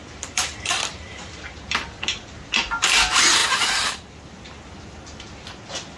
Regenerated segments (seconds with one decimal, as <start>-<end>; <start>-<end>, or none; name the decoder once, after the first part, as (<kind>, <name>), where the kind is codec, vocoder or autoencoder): 0.0-1.6 (vocoder, BigVGAN v2); 3.4-4.3